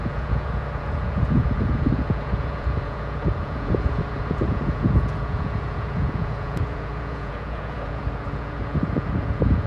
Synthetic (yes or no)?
yes